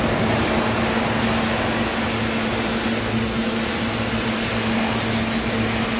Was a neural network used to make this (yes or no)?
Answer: no